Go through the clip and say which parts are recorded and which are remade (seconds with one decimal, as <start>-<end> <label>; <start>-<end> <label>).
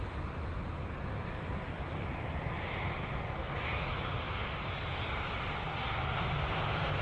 0.0-3.4 recorded; 3.4-4.0 remade; 4.0-7.0 recorded